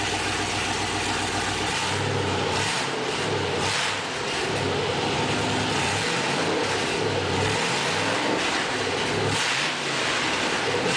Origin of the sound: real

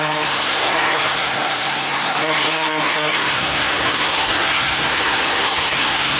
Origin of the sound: fake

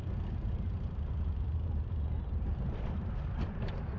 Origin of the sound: fake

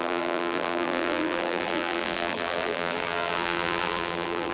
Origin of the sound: fake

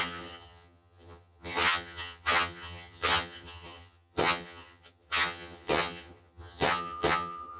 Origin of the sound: fake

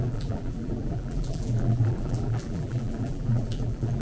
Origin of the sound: fake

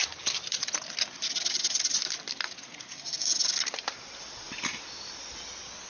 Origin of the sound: real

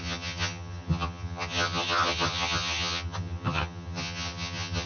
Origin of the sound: fake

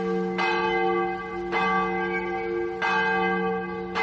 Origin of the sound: real